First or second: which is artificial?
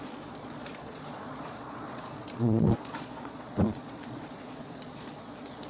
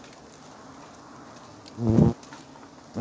first